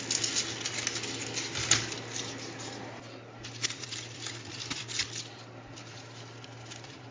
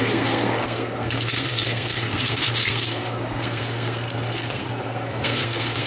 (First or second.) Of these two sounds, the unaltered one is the first